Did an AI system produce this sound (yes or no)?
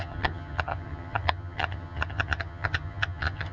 yes